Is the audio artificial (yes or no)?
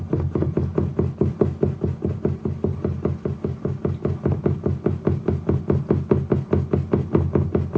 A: no